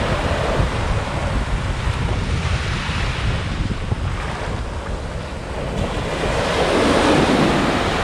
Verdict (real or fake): real